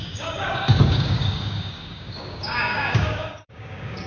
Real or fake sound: fake